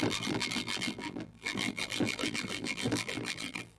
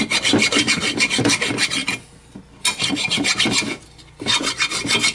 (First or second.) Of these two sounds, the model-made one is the first